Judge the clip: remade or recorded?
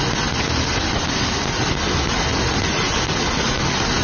recorded